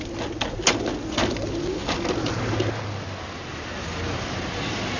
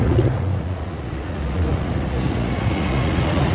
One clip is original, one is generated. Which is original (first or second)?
first